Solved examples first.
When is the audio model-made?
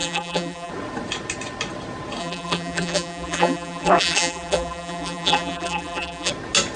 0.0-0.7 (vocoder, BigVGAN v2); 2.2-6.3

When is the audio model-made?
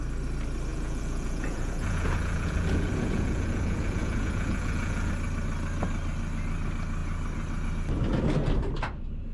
0.7-5.1 (vocoder, Vocos)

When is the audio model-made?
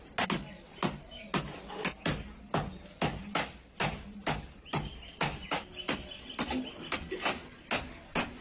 none